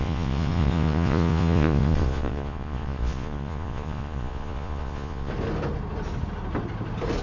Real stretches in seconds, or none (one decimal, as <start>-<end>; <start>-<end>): 5.3-7.2